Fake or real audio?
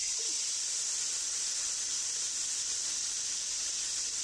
real